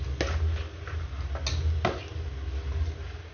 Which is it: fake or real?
real